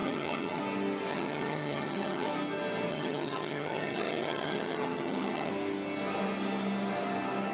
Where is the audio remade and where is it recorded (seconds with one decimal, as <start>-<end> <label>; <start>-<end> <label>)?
0.0-0.6 remade; 0.6-1.1 recorded; 1.1-2.3 remade; 2.3-2.9 recorded; 2.9-5.5 remade; 5.5-7.5 recorded